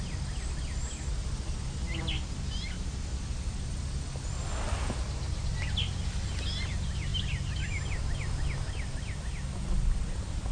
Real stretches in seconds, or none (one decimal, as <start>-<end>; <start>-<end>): 0.0-10.5